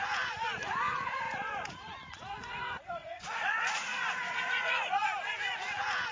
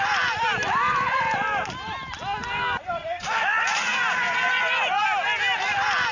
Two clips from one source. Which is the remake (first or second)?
first